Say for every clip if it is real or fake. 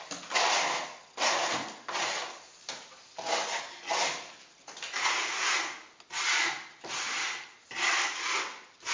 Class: real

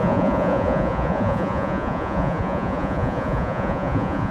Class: fake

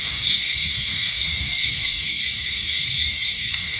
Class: fake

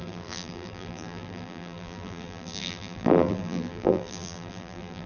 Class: fake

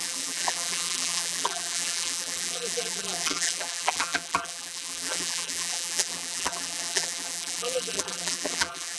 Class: fake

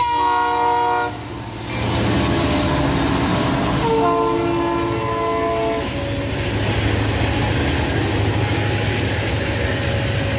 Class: real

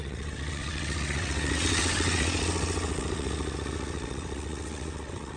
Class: fake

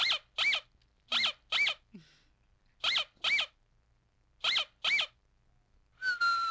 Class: real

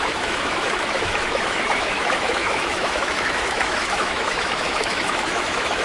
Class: fake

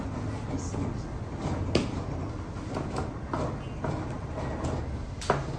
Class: real